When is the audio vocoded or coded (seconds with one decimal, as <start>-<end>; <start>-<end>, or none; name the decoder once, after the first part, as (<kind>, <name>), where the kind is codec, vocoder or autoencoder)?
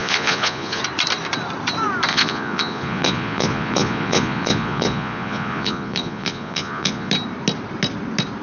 0.0-0.8 (vocoder, Vocos); 2.1-7.1